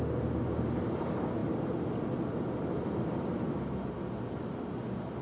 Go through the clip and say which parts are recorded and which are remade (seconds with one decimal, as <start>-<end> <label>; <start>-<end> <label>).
0.0-5.2 recorded